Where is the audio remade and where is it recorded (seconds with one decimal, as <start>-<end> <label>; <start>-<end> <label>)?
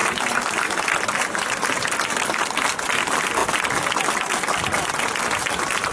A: 0.0-5.9 recorded